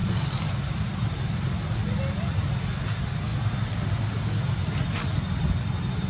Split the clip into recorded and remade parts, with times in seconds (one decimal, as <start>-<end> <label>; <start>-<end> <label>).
0.0-6.1 recorded